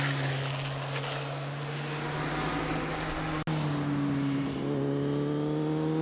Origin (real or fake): real